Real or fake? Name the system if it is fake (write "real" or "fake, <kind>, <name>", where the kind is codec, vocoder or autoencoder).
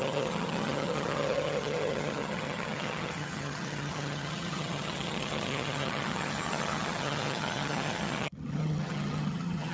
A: fake, vocoder, HiFi-GAN